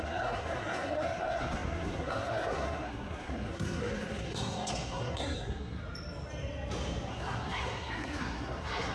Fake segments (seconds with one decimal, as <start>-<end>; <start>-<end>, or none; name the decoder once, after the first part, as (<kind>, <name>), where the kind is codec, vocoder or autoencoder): 0.0-5.8 (codec, SNAC); 7.1-8.9